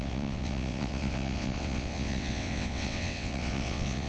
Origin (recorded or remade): remade